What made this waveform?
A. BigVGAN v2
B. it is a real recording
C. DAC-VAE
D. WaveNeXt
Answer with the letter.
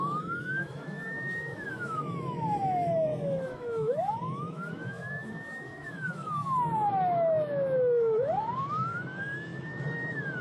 C